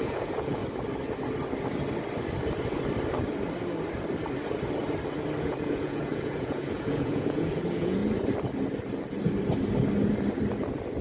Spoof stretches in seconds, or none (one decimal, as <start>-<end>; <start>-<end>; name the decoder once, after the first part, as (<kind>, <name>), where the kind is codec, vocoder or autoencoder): 0.0-0.6 (vocoder, Vocos); 5.4-8.0

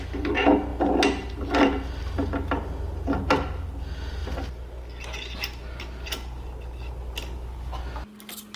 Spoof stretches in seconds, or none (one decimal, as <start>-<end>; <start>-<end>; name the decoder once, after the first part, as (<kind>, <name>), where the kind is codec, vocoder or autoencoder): none

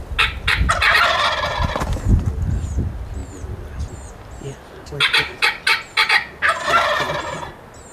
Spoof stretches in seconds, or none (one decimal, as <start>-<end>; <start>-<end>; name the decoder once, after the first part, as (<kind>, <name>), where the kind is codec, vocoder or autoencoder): none

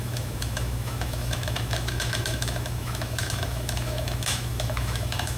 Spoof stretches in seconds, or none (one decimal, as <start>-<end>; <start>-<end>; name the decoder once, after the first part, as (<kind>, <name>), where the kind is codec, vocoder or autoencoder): 0.0-5.4 (autoencoder, DAC-VAE)